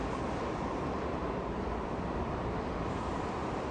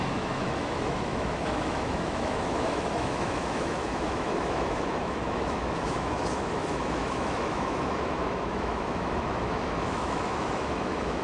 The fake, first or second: second